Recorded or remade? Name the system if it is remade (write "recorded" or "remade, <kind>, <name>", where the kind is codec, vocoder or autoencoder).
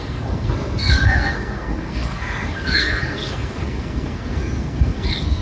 remade, codec, SNAC